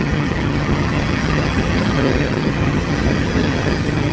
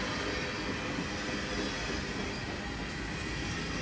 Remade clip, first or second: first